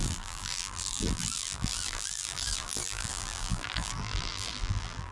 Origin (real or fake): fake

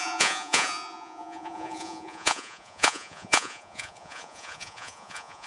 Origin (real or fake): fake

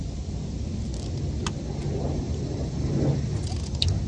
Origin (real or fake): real